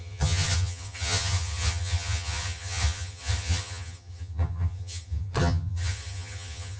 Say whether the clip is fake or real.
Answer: fake